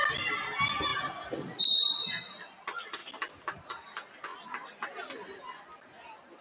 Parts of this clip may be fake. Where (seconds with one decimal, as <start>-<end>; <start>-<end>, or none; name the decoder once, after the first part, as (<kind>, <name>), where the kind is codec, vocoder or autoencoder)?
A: none